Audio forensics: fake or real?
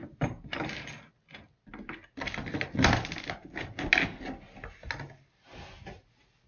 real